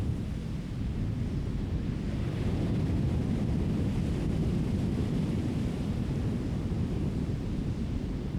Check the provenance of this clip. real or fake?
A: fake